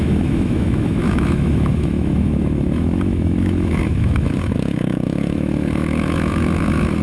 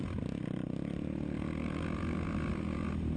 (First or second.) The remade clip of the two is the first